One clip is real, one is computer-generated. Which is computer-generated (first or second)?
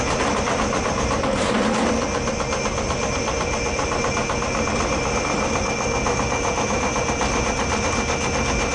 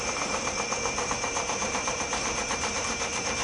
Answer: second